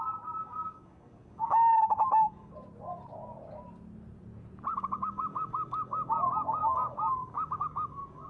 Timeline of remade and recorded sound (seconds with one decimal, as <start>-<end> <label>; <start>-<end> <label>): 0.0-0.4 recorded; 0.4-2.5 remade; 2.5-4.7 recorded; 4.7-6.1 remade; 6.1-6.6 recorded; 6.6-8.3 remade